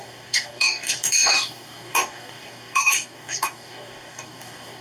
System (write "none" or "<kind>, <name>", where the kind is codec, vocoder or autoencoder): codec, DAC